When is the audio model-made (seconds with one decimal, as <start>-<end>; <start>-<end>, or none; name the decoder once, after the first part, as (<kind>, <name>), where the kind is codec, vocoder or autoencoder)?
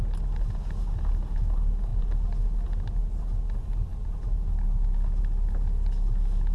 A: none